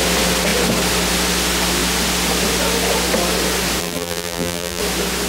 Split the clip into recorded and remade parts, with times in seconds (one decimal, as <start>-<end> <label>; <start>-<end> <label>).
0.0-3.8 recorded; 3.8-4.8 remade; 4.8-5.3 recorded